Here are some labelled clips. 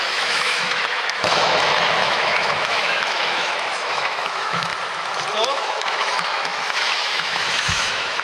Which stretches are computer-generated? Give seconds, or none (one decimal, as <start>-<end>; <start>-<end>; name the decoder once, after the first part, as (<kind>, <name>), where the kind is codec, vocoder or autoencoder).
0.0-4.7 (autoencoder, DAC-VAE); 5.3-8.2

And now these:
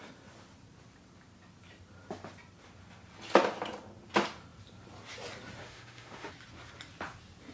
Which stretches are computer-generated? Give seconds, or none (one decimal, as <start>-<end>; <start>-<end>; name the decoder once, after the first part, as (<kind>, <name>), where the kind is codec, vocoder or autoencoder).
5.6-6.3 (autoencoder, DAC-VAE)

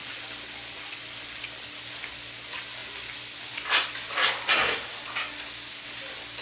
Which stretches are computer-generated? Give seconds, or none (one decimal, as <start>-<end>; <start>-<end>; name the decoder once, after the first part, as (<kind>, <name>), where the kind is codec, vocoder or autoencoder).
none